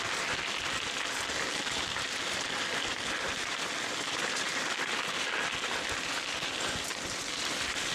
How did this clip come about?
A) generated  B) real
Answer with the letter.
B